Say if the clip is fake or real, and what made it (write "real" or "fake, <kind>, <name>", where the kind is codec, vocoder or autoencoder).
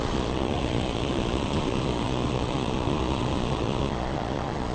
fake, vocoder, Vocos